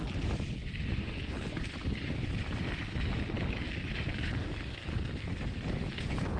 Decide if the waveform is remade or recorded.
recorded